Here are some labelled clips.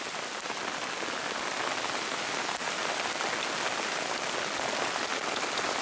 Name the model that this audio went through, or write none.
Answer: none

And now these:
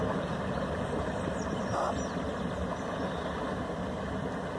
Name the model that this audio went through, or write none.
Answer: none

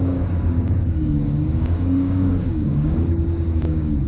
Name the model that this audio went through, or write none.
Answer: codec, DAC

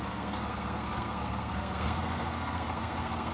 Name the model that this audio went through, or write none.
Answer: codec, SNAC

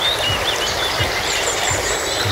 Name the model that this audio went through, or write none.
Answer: none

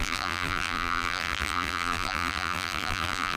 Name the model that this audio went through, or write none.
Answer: vocoder, BigVGAN v2